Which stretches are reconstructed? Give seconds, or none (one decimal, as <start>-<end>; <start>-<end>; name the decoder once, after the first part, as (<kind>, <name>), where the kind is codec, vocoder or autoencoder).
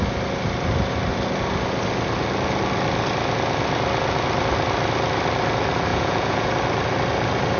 5.9-6.5 (vocoder, Vocos)